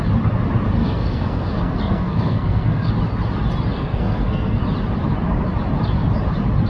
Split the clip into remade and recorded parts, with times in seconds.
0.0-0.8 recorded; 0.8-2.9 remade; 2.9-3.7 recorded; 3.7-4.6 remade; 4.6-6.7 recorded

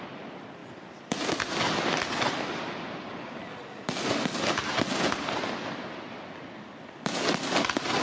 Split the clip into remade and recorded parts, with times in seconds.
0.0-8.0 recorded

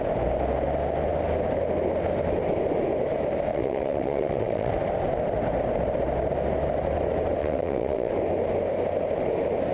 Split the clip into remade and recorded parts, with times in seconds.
0.0-3.5 recorded; 3.5-4.7 remade; 4.7-7.4 recorded; 7.4-8.1 remade; 8.1-9.7 recorded

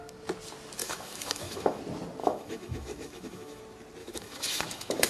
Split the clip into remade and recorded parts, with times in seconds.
0.0-0.8 recorded; 0.8-1.8 remade; 1.8-2.2 recorded; 2.2-3.6 remade; 3.6-4.0 recorded; 4.0-5.1 remade